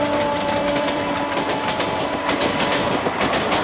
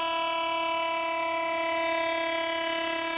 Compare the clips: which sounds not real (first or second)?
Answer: first